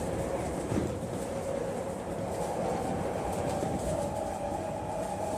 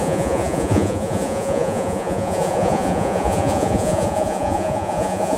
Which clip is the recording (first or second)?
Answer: first